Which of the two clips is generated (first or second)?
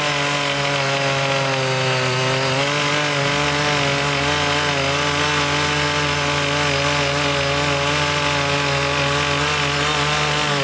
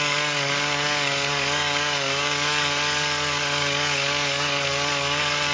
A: second